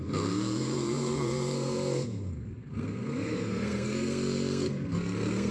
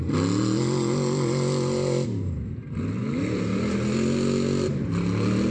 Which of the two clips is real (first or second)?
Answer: second